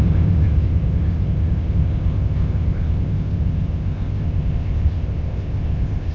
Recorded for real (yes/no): no